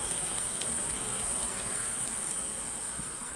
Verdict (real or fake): fake